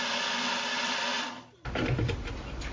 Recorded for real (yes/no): yes